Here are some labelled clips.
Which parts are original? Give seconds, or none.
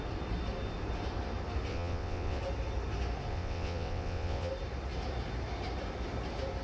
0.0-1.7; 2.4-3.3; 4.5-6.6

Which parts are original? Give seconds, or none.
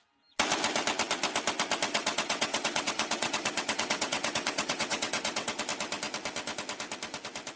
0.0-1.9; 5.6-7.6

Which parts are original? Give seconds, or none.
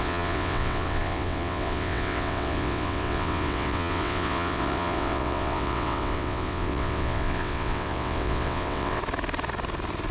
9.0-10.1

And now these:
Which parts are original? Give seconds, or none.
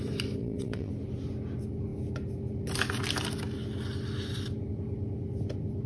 0.0-0.4; 0.9-5.9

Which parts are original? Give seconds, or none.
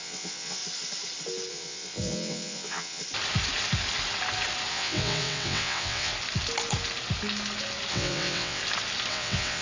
0.6-1.5; 3.0-4.7; 6.1-7.9; 8.6-9.1